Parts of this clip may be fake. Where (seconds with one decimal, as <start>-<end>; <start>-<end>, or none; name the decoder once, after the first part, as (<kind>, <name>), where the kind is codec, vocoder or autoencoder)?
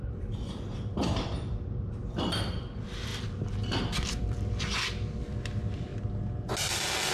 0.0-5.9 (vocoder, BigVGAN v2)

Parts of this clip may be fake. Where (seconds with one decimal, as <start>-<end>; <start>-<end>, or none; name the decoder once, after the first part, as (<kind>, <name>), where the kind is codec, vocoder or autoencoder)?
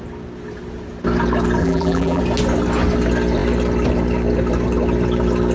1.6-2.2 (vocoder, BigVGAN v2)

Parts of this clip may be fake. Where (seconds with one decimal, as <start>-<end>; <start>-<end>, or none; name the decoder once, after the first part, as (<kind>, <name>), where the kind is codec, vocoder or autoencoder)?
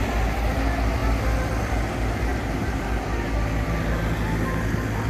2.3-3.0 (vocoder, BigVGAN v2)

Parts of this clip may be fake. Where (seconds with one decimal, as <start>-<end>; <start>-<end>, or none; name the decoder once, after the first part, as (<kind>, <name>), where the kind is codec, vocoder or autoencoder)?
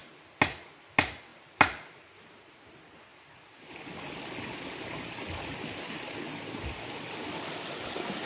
none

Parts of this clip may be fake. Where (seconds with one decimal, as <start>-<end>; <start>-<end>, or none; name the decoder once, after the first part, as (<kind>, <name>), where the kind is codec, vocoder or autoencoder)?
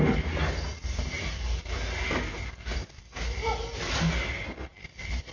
0.7-3.0 (vocoder, BigVGAN v2); 4.7-5.3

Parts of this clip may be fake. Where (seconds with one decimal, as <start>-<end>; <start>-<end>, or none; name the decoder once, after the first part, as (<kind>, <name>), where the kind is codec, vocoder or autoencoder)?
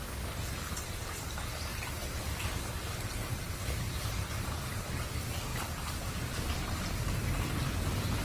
1.7-4.9 (vocoder, BigVGAN v2); 5.5-6.9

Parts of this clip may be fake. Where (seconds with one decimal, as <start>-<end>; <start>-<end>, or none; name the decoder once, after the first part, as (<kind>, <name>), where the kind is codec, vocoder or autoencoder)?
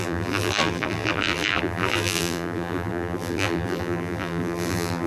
0.0-5.1 (vocoder, BigVGAN v2)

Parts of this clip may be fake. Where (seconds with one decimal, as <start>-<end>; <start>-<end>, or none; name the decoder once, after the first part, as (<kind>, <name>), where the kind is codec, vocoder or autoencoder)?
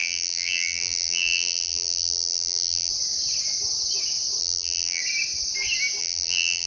0.0-2.9 (vocoder, BigVGAN v2); 4.4-5.0; 6.0-6.7